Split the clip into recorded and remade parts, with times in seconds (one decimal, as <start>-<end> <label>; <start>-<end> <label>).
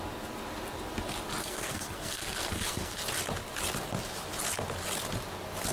0.0-1.4 recorded; 1.4-3.0 remade; 3.0-5.7 recorded